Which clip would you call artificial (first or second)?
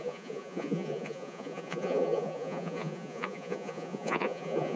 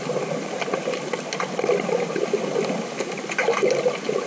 first